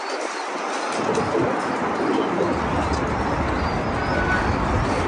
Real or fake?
real